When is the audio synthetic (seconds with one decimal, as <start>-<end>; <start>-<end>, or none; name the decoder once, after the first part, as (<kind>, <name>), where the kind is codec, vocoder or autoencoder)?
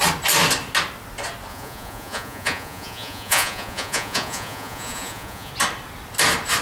1.5-5.5 (vocoder, Vocos)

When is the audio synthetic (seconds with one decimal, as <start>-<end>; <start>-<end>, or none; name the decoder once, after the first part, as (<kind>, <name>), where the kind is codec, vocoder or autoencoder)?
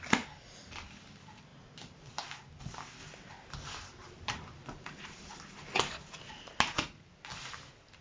3.0-6.6 (vocoder, BigVGAN v2)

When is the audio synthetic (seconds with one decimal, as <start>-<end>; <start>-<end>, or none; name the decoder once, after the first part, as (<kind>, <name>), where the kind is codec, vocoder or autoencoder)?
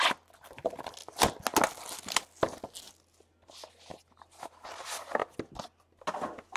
none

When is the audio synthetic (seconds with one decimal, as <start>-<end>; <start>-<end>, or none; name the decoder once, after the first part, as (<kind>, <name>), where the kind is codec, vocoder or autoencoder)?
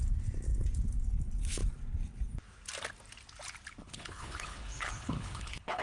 3.8-5.8 (codec, HILCodec)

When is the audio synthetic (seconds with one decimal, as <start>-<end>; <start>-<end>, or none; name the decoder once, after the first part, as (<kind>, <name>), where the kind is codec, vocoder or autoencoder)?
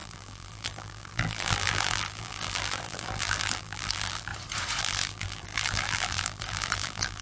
0.0-4.3 (vocoder, BigVGAN v2); 4.8-7.2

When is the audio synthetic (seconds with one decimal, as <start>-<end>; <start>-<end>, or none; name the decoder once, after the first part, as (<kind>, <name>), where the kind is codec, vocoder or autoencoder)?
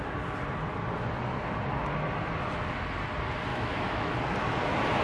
3.5-4.1 (autoencoder, DAC-VAE)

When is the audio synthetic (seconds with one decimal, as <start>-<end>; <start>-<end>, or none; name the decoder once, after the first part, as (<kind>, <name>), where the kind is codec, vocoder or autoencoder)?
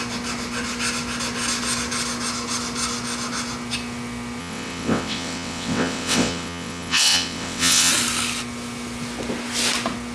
4.4-7.9 (vocoder, WaveNeXt)